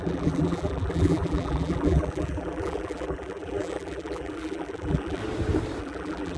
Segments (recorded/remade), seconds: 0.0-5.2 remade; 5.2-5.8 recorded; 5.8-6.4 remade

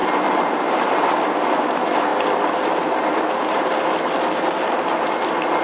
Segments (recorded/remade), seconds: 0.0-1.0 remade; 1.0-5.6 recorded

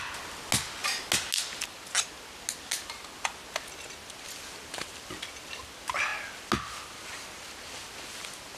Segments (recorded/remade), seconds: 0.0-8.6 recorded